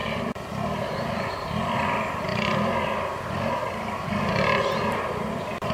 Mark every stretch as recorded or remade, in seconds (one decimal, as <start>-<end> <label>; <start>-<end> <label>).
0.0-5.7 recorded